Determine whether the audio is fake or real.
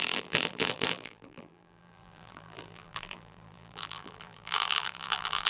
fake